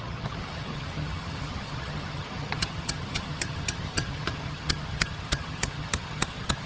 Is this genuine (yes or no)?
no